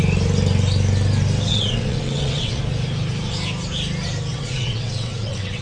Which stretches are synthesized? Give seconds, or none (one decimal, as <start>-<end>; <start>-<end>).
1.5-2.6; 4.3-5.6